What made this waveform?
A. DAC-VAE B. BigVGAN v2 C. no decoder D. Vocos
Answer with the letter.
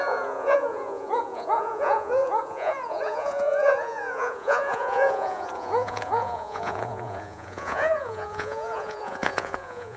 D